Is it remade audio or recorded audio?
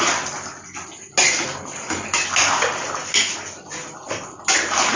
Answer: recorded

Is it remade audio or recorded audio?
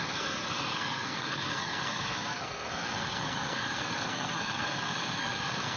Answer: remade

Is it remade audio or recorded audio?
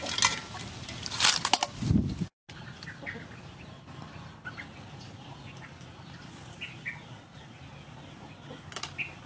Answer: recorded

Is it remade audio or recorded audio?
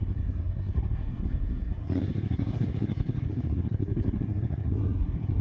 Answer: remade